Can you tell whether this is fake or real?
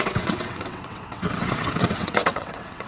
fake